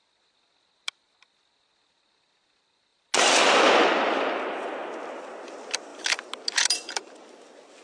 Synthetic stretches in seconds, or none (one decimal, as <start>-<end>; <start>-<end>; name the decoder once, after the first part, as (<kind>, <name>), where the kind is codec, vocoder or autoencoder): none